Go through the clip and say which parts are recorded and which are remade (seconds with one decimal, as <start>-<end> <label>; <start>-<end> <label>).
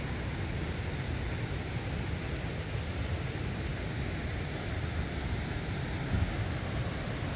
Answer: 0.0-7.4 recorded